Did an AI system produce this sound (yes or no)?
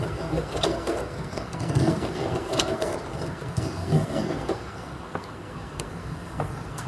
yes